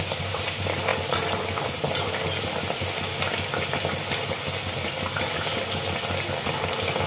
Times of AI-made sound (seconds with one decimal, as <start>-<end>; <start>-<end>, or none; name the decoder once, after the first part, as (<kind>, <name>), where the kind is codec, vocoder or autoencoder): none